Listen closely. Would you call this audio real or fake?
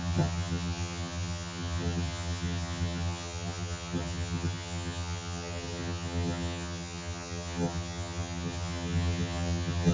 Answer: fake